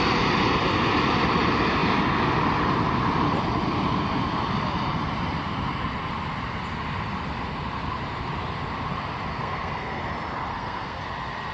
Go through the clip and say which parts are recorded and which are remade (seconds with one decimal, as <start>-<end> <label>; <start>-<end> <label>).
0.0-9.3 recorded; 9.3-10.0 remade; 10.0-10.5 recorded; 10.5-11.0 remade; 11.0-11.5 recorded